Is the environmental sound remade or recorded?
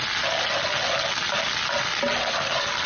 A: recorded